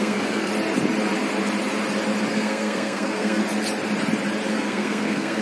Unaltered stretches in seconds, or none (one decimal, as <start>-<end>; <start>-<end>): 0.5-2.3; 3.4-4.5